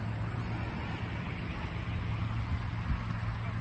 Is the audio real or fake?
real